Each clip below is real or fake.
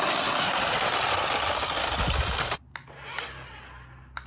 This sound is real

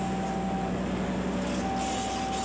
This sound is real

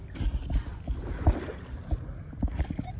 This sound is real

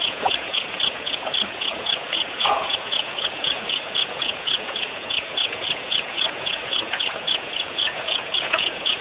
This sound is fake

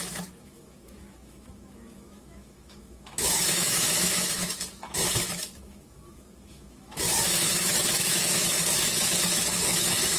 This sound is fake